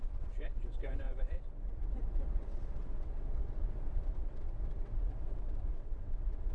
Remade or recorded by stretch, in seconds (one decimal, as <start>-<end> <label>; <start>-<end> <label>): 0.0-6.5 remade